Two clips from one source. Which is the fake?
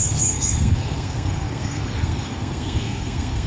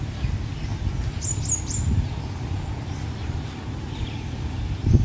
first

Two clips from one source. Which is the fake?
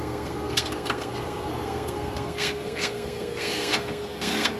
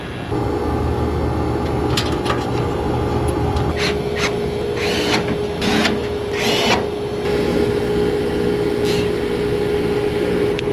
first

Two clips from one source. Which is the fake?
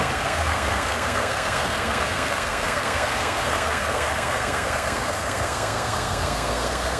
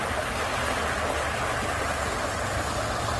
first